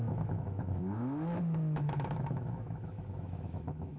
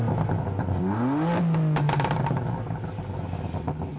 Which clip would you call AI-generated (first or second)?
first